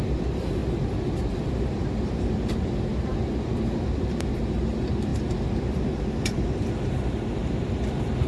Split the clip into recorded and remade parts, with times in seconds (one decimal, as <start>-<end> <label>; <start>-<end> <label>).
0.0-0.6 remade; 0.6-1.4 recorded; 1.4-3.1 remade; 3.1-3.6 recorded; 3.6-8.3 remade